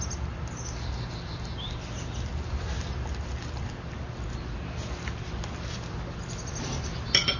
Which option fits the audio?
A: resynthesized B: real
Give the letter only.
B